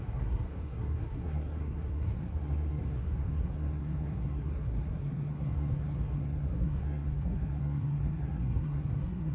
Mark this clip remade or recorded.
remade